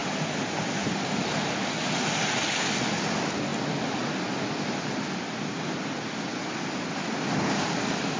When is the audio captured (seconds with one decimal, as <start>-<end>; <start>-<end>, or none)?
0.0-8.2